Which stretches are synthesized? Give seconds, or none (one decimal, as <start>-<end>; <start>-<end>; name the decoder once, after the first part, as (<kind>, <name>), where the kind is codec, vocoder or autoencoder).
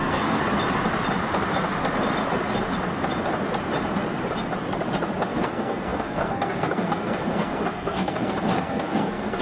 0.0-0.4 (codec, SNAC); 5.2-9.4